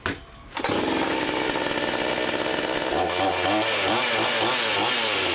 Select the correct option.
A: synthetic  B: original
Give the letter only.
B